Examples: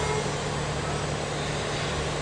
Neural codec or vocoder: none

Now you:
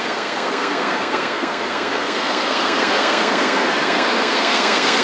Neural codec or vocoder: codec, SNAC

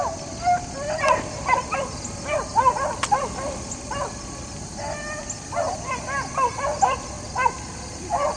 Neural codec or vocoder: none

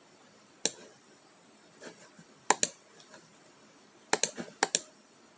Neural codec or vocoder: none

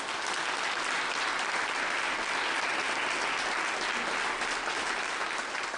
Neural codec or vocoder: none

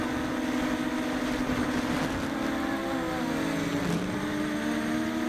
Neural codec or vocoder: none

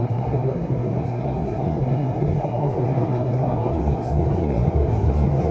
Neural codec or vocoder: codec, SNAC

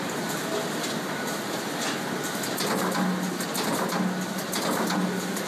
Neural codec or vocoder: none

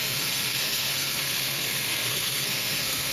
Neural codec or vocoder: codec, SNAC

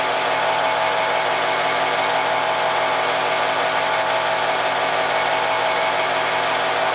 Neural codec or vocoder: none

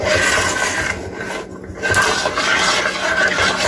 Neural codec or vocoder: none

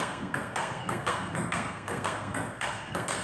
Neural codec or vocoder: codec, SNAC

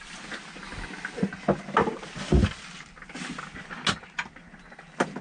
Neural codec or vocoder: none